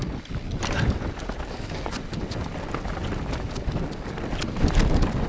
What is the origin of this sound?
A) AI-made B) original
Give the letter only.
B